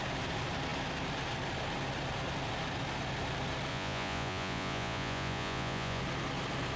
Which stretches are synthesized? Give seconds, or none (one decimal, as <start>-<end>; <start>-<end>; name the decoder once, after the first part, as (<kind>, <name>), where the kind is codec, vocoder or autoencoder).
3.7-6.0 (vocoder, Vocos)